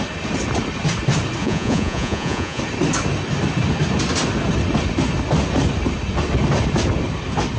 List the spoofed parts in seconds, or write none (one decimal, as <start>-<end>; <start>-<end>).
1.4-2.6